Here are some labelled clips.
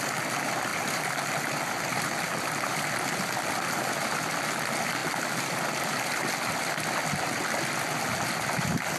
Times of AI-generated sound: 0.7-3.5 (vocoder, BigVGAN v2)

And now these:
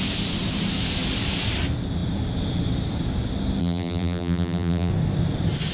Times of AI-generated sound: 3.6-4.9 (vocoder, BigVGAN v2)

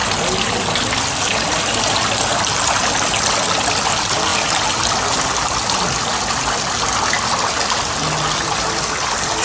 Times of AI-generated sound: none

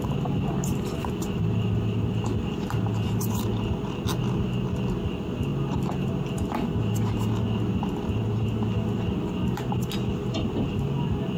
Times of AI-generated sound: none

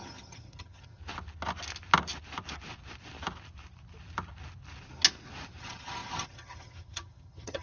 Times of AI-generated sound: 0.0-1.0 (vocoder, HiFi-GAN); 5.6-7.6

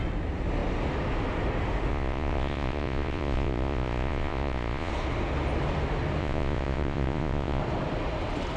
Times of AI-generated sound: 1.9-4.9 (vocoder, Vocos); 6.2-7.6

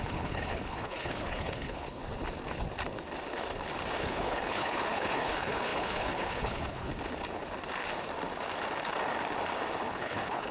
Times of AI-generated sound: 0.0-2.0 (codec, HILCodec); 4.0-6.9; 9.9-10.5